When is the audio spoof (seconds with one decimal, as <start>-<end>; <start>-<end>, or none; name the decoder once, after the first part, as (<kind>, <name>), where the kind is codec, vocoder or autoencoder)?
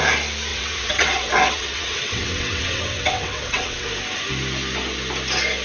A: 0.5-3.9 (vocoder, WaveNeXt)